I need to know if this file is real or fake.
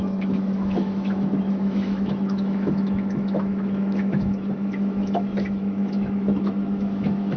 fake